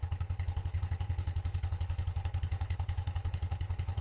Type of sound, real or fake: fake